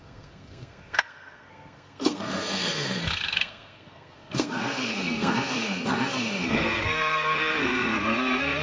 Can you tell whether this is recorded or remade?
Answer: remade